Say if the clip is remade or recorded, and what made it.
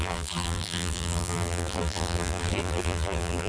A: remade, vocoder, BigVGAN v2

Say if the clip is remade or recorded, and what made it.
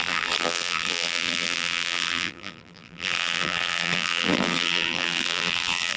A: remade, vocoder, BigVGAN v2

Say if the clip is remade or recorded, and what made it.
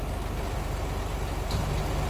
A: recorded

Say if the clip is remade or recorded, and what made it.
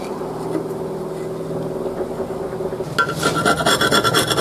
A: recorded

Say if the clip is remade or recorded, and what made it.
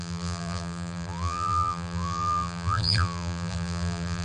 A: remade, vocoder, BigVGAN v2